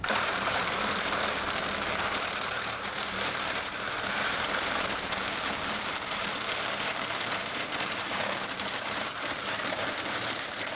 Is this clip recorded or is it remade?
remade